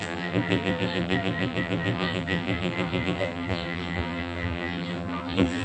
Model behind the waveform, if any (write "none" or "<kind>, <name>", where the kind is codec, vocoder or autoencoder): vocoder, BigVGAN v2